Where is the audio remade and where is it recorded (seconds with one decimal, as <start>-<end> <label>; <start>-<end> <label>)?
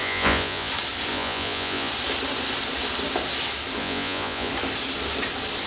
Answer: 0.0-0.7 remade; 0.7-1.1 recorded; 1.1-1.9 remade; 1.9-3.8 recorded; 3.8-4.5 remade; 4.5-5.7 recorded